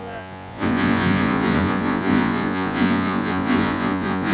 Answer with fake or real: fake